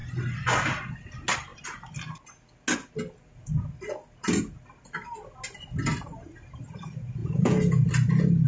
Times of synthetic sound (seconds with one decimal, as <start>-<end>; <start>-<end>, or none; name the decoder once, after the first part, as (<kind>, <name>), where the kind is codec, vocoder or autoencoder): 7.2-7.9 (vocoder, Vocos)

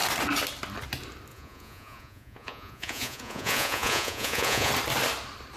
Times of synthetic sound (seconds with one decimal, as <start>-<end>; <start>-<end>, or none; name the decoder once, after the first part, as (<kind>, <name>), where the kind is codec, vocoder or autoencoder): 1.3-4.7 (vocoder, Vocos)

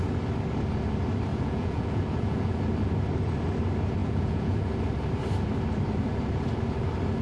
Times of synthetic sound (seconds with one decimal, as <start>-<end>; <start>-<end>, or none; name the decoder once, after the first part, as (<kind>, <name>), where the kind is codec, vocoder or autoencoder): 1.3-2.6 (vocoder, Vocos); 4.0-4.7

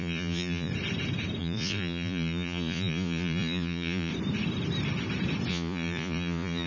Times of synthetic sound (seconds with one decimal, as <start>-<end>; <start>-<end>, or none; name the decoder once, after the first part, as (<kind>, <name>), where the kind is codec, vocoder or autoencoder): 0.0-0.7 (vocoder, Vocos); 1.4-4.1; 5.5-6.7

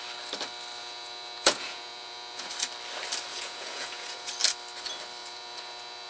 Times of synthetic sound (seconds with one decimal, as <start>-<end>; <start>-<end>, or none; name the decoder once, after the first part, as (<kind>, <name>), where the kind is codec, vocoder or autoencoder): 0.8-2.5 (vocoder, Vocos); 3.3-4.3; 5.2-6.1

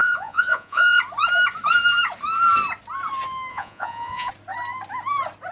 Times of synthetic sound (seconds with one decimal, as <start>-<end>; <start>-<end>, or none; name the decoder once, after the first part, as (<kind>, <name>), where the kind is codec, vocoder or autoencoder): 0.0-1.0 (vocoder, Vocos); 3.5-4.3